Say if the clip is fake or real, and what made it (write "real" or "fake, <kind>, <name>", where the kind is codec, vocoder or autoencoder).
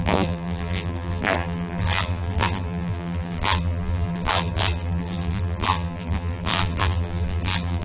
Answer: fake, vocoder, BigVGAN v2